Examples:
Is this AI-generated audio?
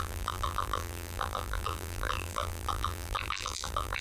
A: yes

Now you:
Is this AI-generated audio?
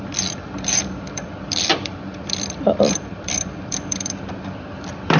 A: yes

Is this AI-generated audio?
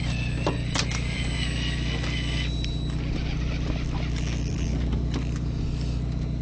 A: no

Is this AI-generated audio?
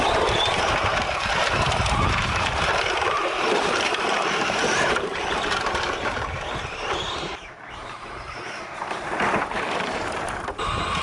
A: yes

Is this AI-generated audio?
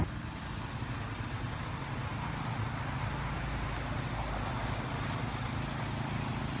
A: no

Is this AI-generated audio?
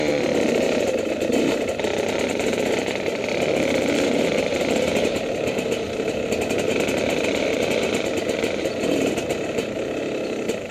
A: yes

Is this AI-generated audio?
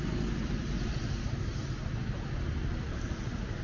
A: no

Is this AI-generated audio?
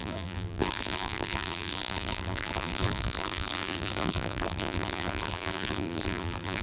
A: yes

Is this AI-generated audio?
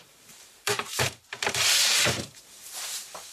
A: yes